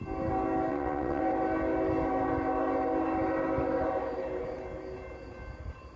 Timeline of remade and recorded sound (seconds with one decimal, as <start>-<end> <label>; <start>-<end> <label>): 0.0-0.7 recorded; 0.7-1.2 remade; 1.2-6.0 recorded